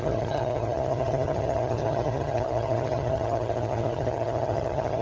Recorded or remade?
remade